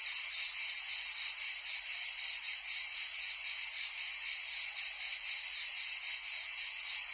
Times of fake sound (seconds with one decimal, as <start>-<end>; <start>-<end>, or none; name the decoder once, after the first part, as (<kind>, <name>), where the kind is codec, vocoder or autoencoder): none